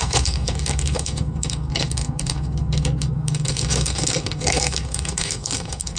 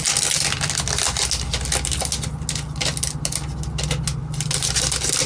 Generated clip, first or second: first